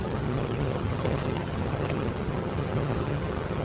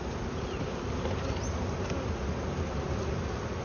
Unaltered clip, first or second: second